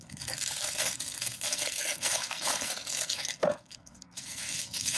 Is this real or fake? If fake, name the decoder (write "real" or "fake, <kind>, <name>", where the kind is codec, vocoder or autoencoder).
fake, codec, SNAC